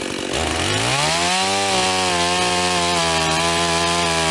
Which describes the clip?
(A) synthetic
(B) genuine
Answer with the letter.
B